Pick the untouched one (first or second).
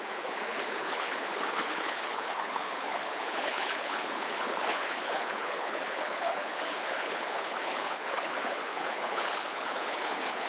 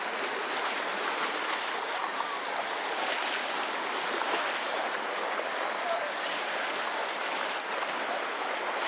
second